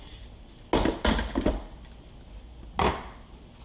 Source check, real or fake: real